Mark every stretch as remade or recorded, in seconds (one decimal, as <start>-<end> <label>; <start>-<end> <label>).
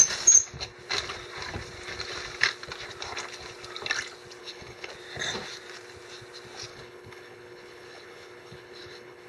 0.0-4.4 recorded; 4.4-4.9 remade; 4.9-6.7 recorded; 6.7-9.3 remade